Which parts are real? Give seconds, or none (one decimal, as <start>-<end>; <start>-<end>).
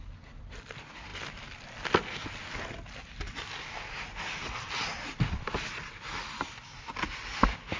0.0-7.8